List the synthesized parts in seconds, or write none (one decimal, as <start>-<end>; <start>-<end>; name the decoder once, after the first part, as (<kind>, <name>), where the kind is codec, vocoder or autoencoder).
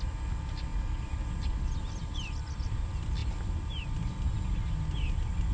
2.0-2.8 (vocoder, BigVGAN v2)